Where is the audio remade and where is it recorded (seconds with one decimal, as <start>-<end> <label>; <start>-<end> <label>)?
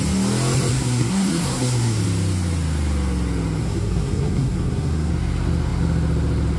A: 0.0-0.7 recorded; 0.7-2.0 remade; 2.0-3.6 recorded; 3.6-5.1 remade; 5.1-6.6 recorded